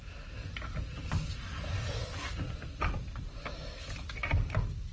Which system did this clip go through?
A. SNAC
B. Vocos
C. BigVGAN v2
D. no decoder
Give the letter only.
D